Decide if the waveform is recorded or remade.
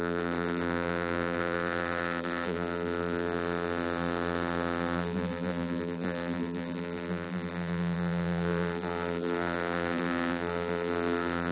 remade